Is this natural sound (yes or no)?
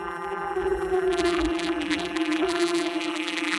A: no